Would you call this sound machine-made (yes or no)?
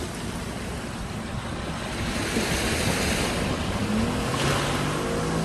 no